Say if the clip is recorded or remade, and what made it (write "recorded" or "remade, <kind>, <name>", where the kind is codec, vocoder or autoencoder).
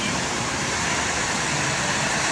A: remade, vocoder, BigVGAN v2